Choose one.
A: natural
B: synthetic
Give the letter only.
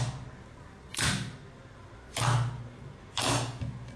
A